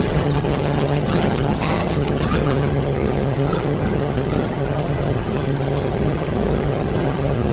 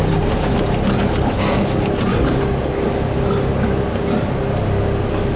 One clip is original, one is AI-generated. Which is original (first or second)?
second